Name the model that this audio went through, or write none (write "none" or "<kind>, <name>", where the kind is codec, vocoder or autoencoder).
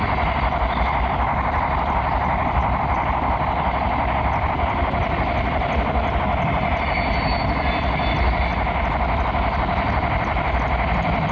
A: none